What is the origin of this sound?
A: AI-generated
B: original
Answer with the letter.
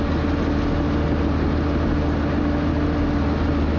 B